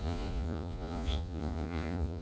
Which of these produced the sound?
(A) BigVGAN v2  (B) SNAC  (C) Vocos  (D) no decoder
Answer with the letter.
C